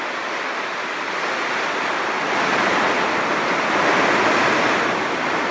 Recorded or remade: recorded